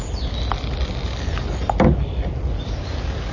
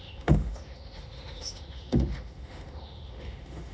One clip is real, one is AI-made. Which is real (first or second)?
first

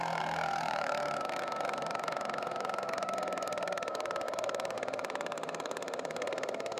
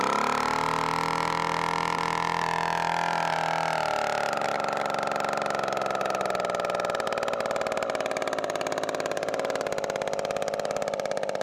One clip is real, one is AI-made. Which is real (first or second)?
second